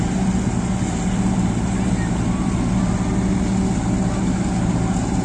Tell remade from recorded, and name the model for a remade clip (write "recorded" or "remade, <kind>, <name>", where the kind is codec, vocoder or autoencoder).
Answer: recorded